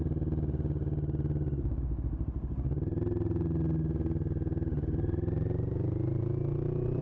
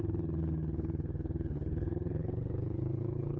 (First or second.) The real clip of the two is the first